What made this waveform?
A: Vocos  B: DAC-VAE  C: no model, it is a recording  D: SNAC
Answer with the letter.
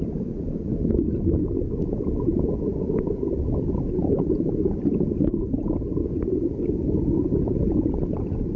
C